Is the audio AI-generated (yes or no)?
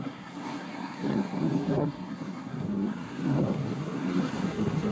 yes